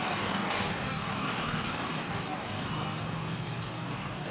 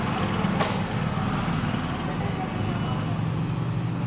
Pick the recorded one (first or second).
second